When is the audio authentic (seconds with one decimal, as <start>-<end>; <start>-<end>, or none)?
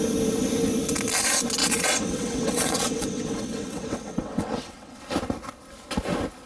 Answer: 0.0-1.6; 5.0-6.5